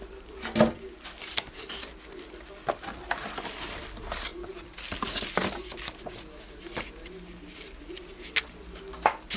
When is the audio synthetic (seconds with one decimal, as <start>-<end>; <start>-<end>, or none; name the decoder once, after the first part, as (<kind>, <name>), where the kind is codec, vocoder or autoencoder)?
none